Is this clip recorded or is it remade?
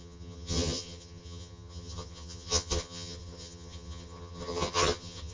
remade